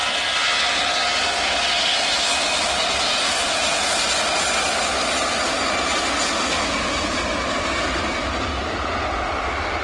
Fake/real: real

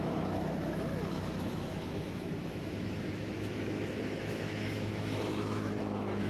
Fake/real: fake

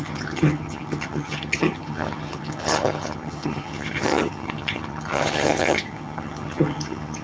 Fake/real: fake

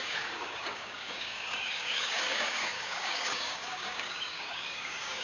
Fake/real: fake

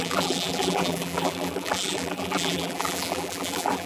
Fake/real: fake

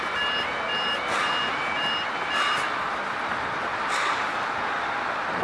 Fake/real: real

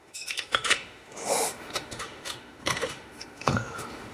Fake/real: fake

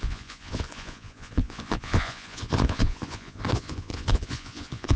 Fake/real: fake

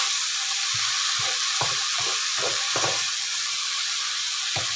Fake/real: fake